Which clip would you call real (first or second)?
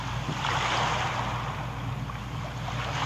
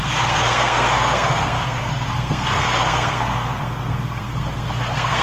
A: first